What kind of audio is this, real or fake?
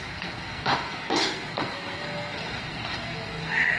fake